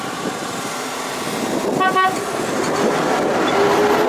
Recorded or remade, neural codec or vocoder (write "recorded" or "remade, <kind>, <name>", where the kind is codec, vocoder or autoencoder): recorded